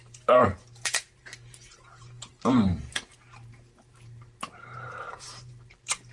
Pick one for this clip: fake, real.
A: fake